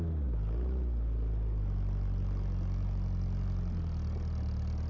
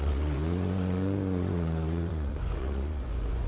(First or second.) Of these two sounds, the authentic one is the first